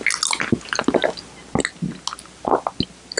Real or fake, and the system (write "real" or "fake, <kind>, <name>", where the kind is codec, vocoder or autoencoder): real